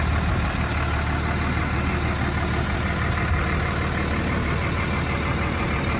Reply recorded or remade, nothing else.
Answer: recorded